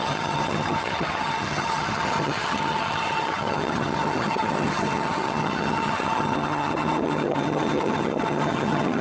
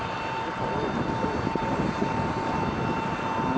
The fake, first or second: first